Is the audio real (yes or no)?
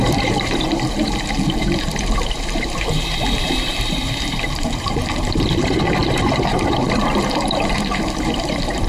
no